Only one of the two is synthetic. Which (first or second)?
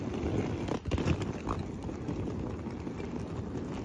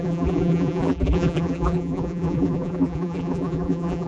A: second